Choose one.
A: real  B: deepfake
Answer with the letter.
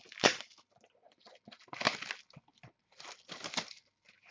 A